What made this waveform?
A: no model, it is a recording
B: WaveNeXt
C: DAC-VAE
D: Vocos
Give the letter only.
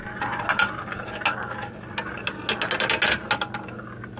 A